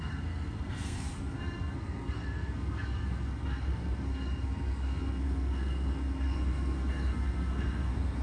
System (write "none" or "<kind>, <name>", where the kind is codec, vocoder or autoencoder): codec, SNAC